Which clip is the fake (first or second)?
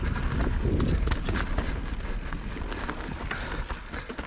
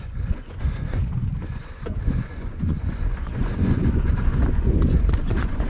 second